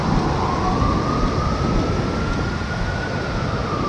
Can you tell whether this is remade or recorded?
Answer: recorded